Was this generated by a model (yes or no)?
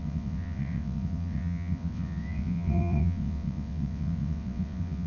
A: yes